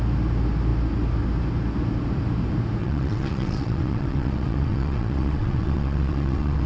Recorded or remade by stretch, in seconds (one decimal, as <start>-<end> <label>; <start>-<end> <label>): 0.0-2.8 recorded; 2.8-6.7 remade